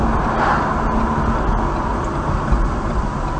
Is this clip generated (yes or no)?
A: no